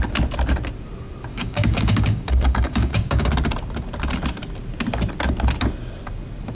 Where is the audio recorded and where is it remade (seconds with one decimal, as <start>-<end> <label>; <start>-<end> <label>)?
0.0-1.3 recorded; 1.3-3.3 remade; 3.3-6.5 recorded